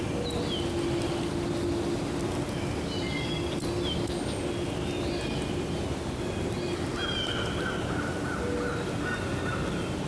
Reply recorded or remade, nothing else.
recorded